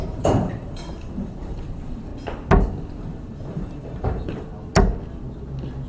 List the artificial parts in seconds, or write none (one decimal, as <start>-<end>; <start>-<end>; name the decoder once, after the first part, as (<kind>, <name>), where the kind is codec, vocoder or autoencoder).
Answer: 0.0-2.1 (vocoder, BigVGAN v2); 2.9-4.5